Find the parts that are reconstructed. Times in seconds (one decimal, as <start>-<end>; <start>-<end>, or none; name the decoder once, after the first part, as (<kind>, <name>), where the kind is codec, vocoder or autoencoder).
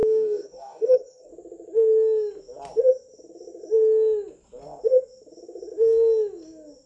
0.0-1.3 (codec, DAC)